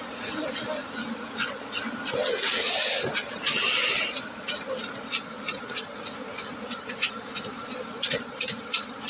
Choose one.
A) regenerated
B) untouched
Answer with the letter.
B